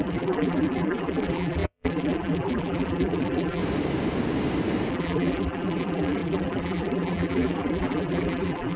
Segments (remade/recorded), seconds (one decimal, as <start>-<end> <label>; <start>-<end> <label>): 0.0-3.6 remade; 3.6-4.9 recorded; 4.9-8.8 remade